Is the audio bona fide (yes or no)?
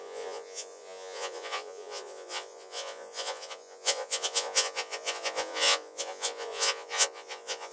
no